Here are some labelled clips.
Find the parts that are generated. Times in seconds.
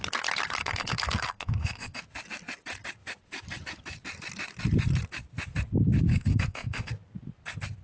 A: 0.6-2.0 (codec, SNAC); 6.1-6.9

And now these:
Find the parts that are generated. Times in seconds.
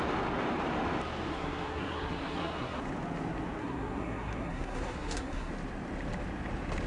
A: 1.3-2.8 (codec, SNAC); 3.6-5.5